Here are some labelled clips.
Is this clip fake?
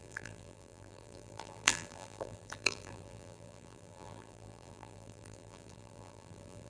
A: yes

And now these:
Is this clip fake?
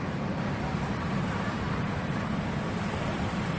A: yes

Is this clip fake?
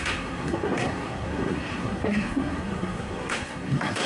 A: yes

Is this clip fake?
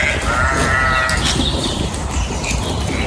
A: no